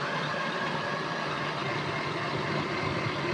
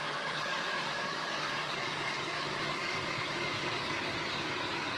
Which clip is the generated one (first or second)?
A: second